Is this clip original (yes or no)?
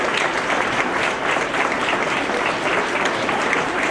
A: no